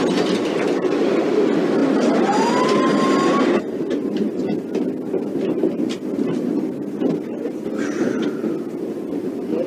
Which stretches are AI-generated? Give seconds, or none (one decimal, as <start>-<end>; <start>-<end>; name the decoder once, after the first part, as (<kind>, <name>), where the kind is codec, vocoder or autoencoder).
none